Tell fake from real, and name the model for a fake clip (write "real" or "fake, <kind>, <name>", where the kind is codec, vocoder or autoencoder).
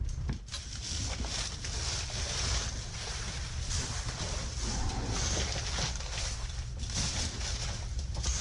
real